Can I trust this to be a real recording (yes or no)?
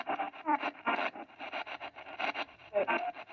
no